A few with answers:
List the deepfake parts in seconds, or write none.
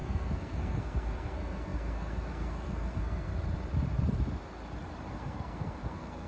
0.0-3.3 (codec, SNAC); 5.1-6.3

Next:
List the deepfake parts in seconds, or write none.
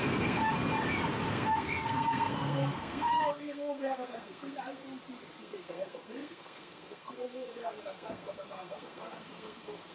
0.0-0.4 (codec, SNAC); 1.3-4.8; 5.4-9.9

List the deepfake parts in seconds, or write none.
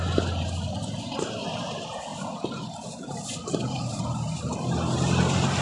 none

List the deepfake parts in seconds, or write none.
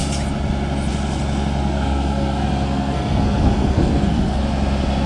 1.6-4.4 (codec, SNAC)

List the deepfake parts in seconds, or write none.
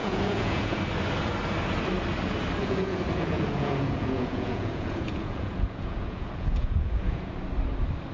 0.0-0.8 (vocoder, Vocos); 2.6-7.3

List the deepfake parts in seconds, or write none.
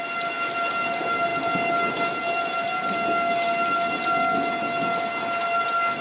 none